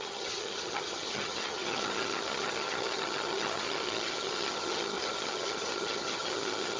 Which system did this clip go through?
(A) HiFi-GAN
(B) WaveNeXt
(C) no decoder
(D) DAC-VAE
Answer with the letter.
A